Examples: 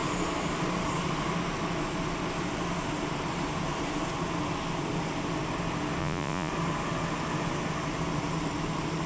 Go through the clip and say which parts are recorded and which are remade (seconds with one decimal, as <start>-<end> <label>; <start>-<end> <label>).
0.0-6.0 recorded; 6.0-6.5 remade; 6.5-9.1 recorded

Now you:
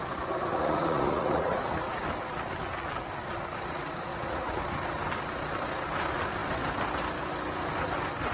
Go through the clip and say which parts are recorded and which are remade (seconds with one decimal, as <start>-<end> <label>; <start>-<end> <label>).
0.0-0.5 recorded; 0.5-2.0 remade; 2.0-4.1 recorded; 4.1-4.6 remade; 4.6-8.3 recorded

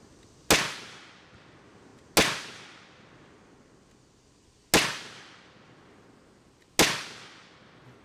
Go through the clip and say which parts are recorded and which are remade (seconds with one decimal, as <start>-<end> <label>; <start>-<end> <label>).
0.0-8.0 recorded

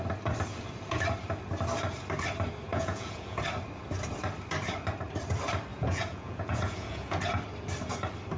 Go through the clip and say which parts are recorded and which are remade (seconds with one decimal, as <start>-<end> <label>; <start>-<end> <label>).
0.0-2.7 recorded; 2.7-3.4 remade; 3.4-5.7 recorded; 5.7-7.2 remade; 7.2-8.4 recorded

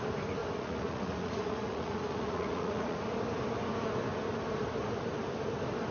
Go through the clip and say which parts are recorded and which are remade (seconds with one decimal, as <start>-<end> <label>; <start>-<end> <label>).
0.0-0.4 recorded; 0.4-3.0 remade; 3.0-5.9 recorded